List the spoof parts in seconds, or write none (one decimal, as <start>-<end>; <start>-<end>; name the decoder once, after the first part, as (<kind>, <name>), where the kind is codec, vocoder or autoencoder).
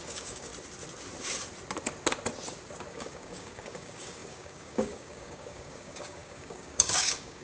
0.0-0.5 (codec, DAC); 2.9-7.4